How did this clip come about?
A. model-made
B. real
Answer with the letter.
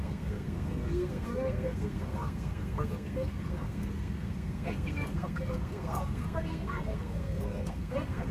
A